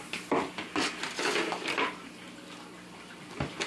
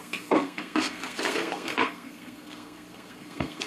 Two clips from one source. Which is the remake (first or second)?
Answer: second